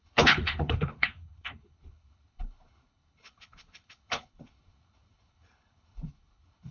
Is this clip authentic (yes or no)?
no